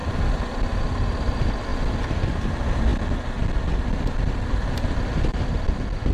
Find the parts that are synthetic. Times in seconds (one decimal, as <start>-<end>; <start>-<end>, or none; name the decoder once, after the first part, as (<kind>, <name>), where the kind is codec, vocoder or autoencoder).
none